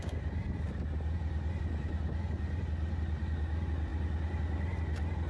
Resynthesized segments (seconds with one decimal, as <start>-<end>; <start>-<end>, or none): none